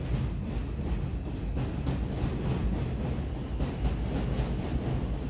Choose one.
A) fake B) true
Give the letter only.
B